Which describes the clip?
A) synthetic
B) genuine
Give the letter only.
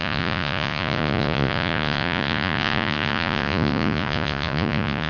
A